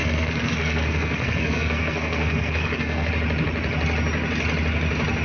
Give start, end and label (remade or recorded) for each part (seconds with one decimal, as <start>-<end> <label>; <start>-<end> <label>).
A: 0.0-3.1 remade; 3.1-5.2 recorded

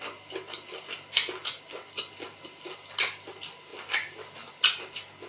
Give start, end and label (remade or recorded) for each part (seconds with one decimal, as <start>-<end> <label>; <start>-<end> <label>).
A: 0.0-5.3 recorded

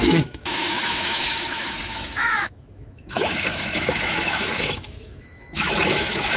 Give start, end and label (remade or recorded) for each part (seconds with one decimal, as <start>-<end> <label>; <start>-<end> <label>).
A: 0.0-6.4 remade

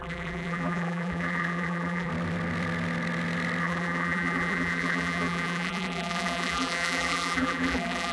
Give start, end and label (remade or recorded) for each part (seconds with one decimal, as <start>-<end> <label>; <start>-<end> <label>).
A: 0.0-2.1 remade; 2.1-3.6 recorded; 3.6-8.1 remade

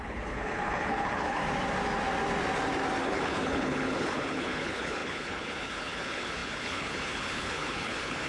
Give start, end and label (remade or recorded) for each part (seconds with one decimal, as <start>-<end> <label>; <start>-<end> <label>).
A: 0.0-1.4 remade; 1.4-3.0 recorded; 3.0-8.3 remade

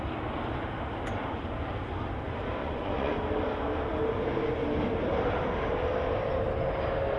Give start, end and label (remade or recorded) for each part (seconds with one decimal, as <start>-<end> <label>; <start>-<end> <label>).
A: 0.0-2.6 recorded; 2.6-3.2 remade; 3.2-7.2 recorded

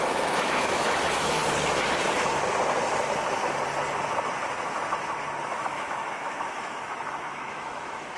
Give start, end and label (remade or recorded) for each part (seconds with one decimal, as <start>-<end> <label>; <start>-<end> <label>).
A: 0.0-1.4 remade; 1.4-5.5 recorded; 5.5-8.2 remade